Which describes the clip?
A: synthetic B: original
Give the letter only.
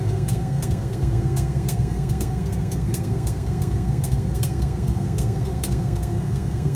A